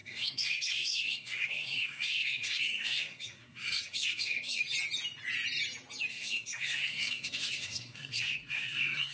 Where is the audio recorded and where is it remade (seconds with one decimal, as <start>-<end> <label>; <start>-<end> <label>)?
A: 0.0-4.6 remade; 4.6-6.1 recorded; 6.1-9.1 remade